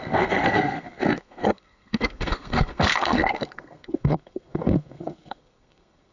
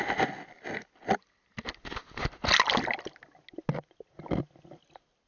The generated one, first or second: first